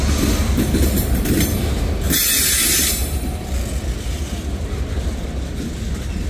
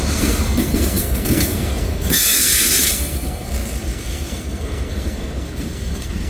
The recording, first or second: first